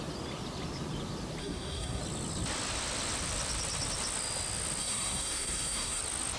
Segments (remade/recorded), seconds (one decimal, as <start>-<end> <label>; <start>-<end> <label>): 0.0-1.4 recorded; 1.4-2.0 remade; 2.0-4.8 recorded; 4.8-6.0 remade; 6.0-6.4 recorded

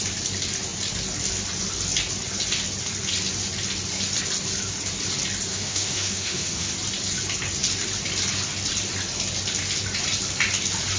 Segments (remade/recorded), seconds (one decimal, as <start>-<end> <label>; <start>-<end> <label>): 0.0-5.5 recorded; 5.5-6.7 remade; 6.7-11.0 recorded

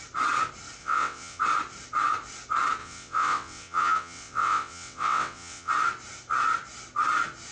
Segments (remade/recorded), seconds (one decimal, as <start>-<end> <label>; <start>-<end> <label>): 0.0-0.8 recorded; 0.8-1.4 remade; 1.4-2.8 recorded; 2.8-5.7 remade; 5.7-7.5 recorded

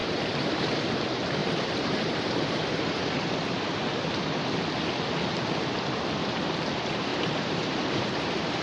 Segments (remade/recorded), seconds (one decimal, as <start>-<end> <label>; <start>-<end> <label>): 0.0-0.6 remade; 0.6-1.4 recorded; 1.4-3.2 remade; 3.2-7.1 recorded; 7.1-8.6 remade

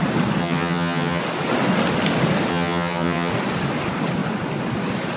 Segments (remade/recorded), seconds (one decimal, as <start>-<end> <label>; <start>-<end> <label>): 0.0-0.4 recorded; 0.4-1.2 remade; 1.2-2.5 recorded; 2.5-3.3 remade; 3.3-5.2 recorded